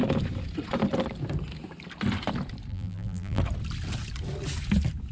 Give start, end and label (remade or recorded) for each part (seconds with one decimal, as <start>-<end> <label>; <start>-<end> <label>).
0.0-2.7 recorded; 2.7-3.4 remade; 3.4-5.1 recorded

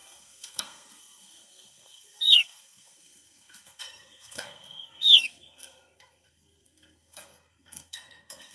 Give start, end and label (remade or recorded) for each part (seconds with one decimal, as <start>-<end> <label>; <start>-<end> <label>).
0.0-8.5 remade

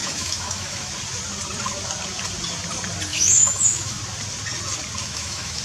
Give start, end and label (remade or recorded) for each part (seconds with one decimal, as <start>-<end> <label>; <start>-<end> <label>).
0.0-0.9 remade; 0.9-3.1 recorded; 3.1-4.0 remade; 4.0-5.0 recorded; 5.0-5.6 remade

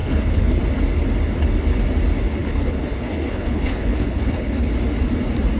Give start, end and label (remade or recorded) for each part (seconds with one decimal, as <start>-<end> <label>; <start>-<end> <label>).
0.0-0.6 remade; 0.6-2.4 recorded; 2.4-4.7 remade; 4.7-5.6 recorded